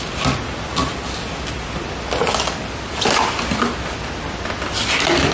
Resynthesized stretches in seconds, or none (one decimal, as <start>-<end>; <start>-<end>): none